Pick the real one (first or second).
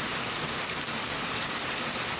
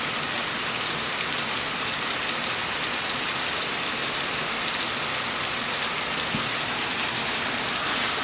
second